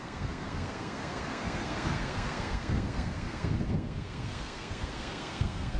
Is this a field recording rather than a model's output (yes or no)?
no